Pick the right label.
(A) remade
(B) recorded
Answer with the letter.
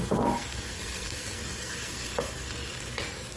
A